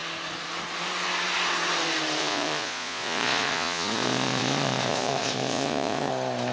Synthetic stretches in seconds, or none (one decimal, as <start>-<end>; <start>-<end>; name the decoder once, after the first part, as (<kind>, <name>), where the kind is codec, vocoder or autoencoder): 2.2-6.1 (vocoder, Vocos)